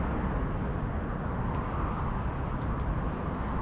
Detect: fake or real real